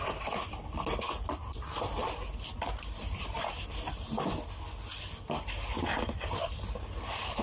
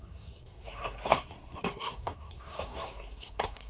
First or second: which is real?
first